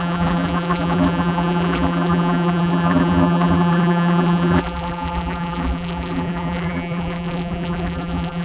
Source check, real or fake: fake